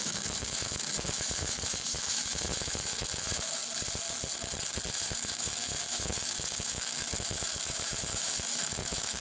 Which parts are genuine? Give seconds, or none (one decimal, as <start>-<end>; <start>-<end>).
3.6-4.9